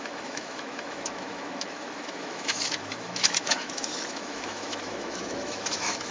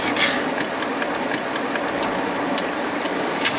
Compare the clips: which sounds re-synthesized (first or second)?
first